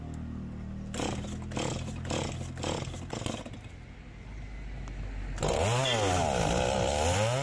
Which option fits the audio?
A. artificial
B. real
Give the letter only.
B